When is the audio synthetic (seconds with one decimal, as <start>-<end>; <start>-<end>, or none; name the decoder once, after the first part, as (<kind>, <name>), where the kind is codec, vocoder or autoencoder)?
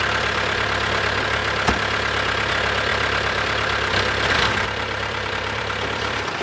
0.0-1.4 (vocoder, BigVGAN v2); 2.5-6.4